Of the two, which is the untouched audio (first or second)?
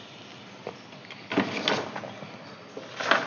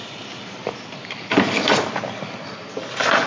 first